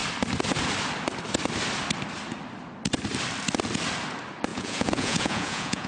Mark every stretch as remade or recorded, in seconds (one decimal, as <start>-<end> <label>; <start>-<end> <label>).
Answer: 0.0-4.5 recorded; 4.5-5.9 remade